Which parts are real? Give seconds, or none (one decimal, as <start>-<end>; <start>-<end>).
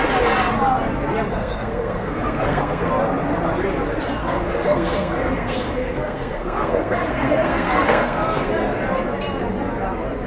0.0-1.3; 2.9-4.2; 8.5-10.3